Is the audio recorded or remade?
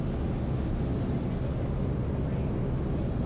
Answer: recorded